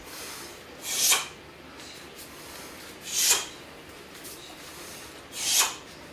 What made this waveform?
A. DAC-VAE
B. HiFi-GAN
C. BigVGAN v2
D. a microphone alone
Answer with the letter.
D